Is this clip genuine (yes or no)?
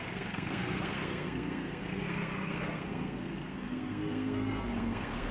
no